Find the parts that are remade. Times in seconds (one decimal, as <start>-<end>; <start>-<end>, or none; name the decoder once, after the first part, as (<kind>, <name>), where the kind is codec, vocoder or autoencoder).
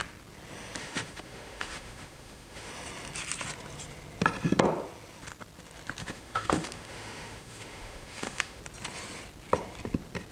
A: 0.8-2.7 (autoencoder, DAC-VAE); 6.0-8.6